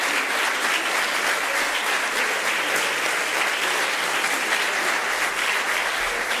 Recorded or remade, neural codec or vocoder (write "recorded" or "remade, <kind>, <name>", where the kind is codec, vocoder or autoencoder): recorded